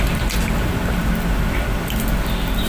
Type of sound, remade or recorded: recorded